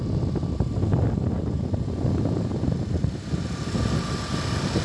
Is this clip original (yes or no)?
yes